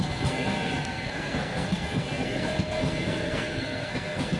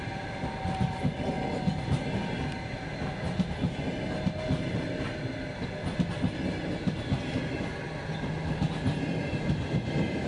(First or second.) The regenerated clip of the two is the first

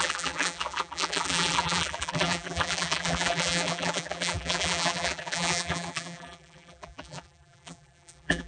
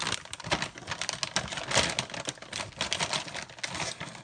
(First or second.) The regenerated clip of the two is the first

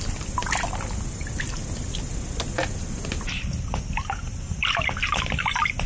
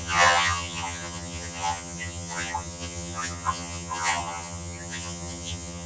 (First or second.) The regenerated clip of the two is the second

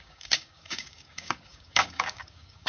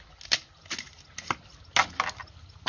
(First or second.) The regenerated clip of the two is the first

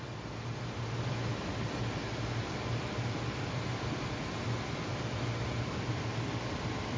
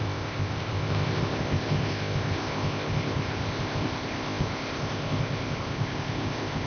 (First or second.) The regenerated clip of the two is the second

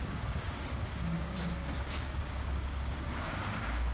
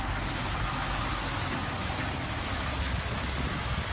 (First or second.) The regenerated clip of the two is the first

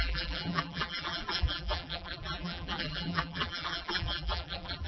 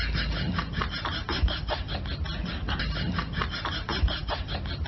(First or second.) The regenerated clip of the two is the first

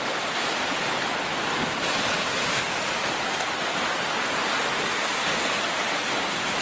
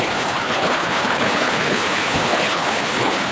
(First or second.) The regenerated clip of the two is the second